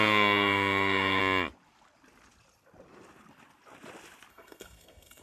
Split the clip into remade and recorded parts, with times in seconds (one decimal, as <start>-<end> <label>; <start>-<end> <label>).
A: 0.0-1.2 remade; 1.2-4.3 recorded; 4.3-5.2 remade